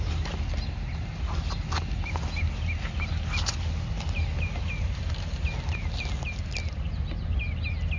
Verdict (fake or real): real